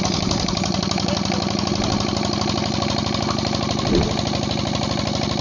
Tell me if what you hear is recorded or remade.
recorded